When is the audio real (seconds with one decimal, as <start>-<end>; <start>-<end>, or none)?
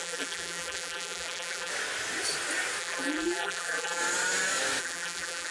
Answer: 1.7-2.8; 4.0-4.8